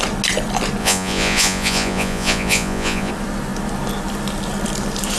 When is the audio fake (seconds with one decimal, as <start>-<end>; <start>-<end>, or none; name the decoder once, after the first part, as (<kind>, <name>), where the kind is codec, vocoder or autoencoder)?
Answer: 0.8-3.1 (vocoder, Vocos)